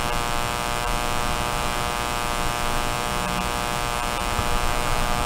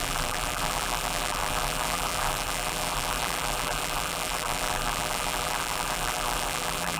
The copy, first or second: second